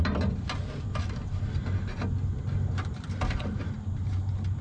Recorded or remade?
recorded